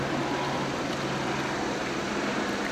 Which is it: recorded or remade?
recorded